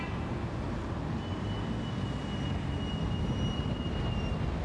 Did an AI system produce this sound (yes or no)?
no